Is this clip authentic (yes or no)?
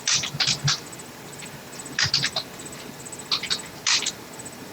yes